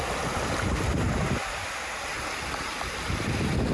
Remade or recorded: recorded